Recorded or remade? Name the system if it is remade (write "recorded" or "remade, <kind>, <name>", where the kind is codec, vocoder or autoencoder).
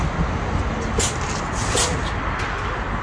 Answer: recorded